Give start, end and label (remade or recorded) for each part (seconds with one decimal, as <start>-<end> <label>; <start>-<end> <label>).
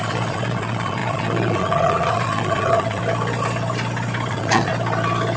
0.0-3.0 remade; 3.0-4.3 recorded; 4.3-4.7 remade; 4.7-5.4 recorded